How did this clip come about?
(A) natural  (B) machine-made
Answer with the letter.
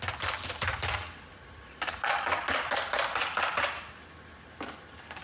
A